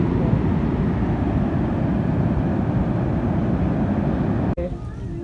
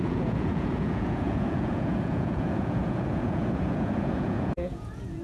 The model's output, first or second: second